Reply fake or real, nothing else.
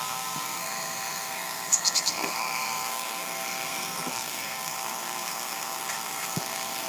fake